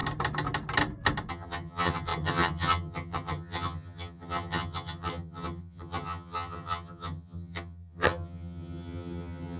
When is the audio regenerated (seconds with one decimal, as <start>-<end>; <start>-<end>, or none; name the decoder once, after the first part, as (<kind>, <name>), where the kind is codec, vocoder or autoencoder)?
1.3-9.6 (vocoder, HiFi-GAN)